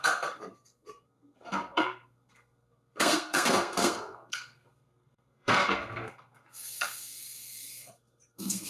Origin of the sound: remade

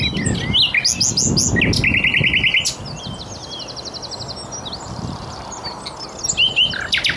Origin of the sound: recorded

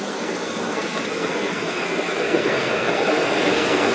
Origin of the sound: remade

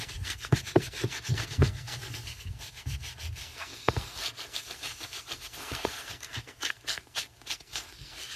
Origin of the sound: remade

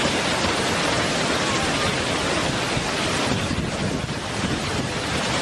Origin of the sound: recorded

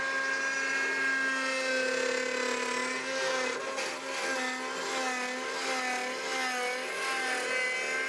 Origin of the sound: recorded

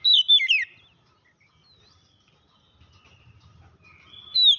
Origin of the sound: recorded